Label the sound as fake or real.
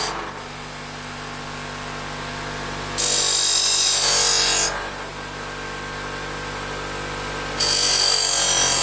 real